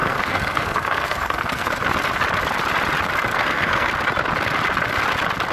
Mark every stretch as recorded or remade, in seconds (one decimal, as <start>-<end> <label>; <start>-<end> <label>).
0.0-1.8 remade; 1.8-3.3 recorded; 3.3-3.9 remade; 3.9-5.5 recorded